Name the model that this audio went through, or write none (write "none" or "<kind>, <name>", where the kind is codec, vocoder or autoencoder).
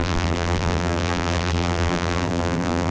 vocoder, BigVGAN v2